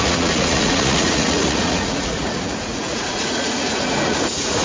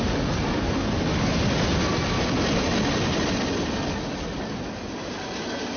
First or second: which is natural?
second